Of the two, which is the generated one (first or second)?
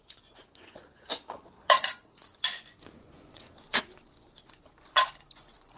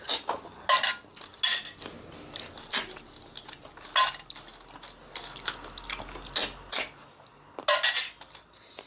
first